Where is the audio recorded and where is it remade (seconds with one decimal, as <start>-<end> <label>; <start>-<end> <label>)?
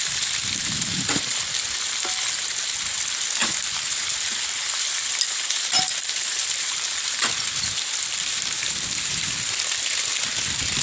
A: 0.0-3.4 recorded; 3.4-7.3 remade; 7.3-8.1 recorded; 8.1-9.3 remade; 9.3-10.8 recorded